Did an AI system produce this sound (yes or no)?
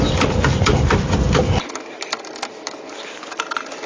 no